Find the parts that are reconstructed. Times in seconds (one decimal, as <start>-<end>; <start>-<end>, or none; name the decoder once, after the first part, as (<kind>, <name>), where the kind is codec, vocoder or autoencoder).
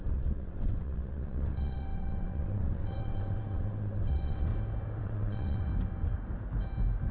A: 0.0-4.5 (vocoder, WaveNeXt); 5.0-5.7